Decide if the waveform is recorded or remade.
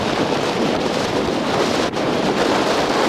remade